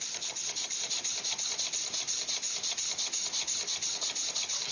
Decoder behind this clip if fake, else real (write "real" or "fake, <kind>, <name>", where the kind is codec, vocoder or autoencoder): real